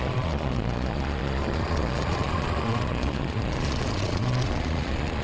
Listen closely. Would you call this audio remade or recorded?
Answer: remade